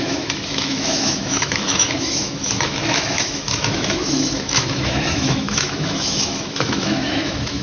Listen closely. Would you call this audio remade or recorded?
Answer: remade